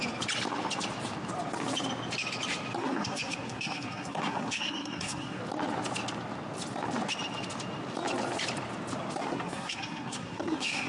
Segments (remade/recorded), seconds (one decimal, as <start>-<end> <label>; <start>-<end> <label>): 0.0-2.8 recorded; 2.8-5.4 remade; 5.4-9.2 recorded; 9.2-10.9 remade